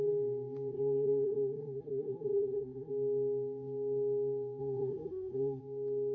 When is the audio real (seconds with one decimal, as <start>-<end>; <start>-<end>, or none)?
0.0-0.7; 2.9-4.6; 5.6-6.1

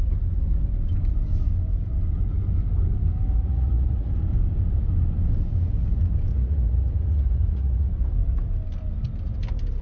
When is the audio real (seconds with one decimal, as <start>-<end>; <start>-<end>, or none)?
0.0-3.4; 4.1-6.3; 7.9-9.8

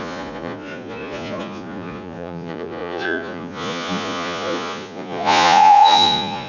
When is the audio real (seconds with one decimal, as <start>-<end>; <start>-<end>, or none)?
none